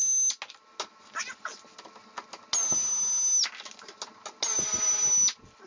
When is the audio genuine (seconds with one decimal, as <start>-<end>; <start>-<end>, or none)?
0.0-5.7

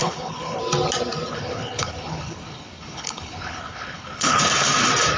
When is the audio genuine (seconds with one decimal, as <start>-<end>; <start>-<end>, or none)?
0.6-1.3; 4.4-5.2

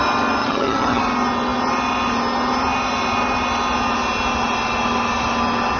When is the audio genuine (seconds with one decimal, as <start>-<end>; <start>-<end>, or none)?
0.0-0.4; 1.0-5.8

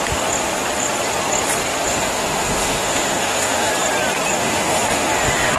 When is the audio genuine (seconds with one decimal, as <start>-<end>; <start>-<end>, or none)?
0.0-1.9; 3.7-4.4

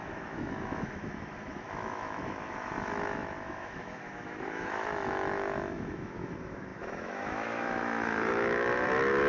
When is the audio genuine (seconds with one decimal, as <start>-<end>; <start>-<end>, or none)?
none

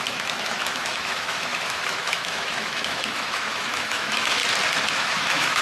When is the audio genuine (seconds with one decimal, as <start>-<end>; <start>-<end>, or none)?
4.4-4.9

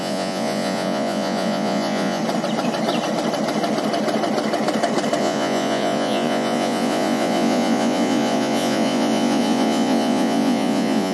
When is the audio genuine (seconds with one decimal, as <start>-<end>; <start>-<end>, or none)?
2.2-5.2